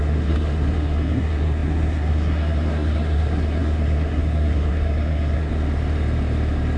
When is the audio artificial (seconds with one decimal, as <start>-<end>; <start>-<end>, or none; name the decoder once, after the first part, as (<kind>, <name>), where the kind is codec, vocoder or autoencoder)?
0.0-5.5 (codec, SNAC)